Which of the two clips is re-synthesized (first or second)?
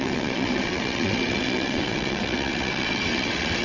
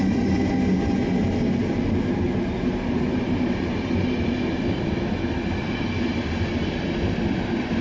first